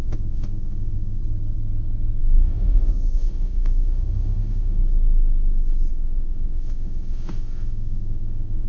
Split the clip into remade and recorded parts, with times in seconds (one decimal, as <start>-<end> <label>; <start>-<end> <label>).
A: 0.0-1.2 remade; 1.2-2.2 recorded; 2.2-4.8 remade; 4.8-5.9 recorded; 5.9-8.7 remade